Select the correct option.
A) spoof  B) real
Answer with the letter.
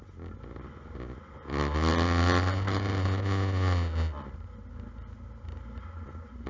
B